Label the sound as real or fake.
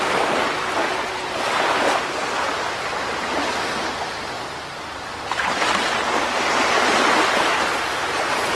real